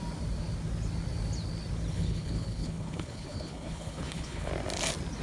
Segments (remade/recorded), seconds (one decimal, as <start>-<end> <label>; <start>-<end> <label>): 0.0-1.9 recorded; 1.9-4.5 remade; 4.5-5.2 recorded